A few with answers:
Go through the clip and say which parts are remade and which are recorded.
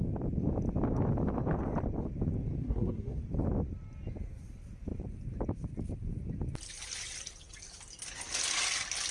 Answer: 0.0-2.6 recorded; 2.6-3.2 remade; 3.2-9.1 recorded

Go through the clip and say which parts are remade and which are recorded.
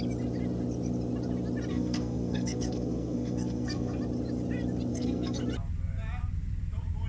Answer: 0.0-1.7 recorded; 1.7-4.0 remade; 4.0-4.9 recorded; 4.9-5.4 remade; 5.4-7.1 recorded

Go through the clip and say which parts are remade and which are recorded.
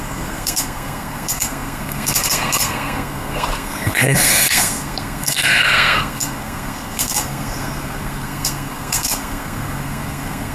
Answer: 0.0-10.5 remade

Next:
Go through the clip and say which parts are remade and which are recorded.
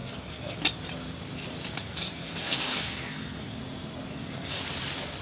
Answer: 0.0-0.6 remade; 0.6-1.8 recorded; 1.8-3.6 remade; 3.6-4.1 recorded; 4.1-4.6 remade; 4.6-5.2 recorded